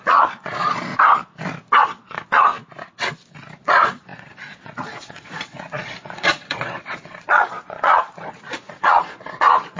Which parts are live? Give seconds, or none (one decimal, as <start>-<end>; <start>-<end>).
0.9-1.8; 2.5-3.6